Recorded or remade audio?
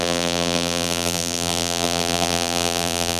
remade